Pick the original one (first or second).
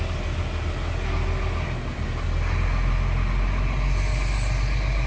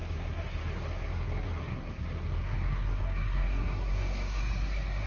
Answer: first